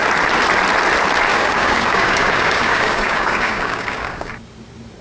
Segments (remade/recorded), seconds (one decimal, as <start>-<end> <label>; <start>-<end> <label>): 0.0-1.3 recorded; 1.3-4.3 remade; 4.3-5.0 recorded